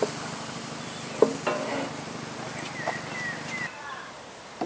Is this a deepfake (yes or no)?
no